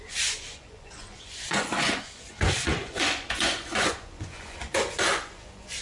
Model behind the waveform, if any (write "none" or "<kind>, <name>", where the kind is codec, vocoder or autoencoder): vocoder, Vocos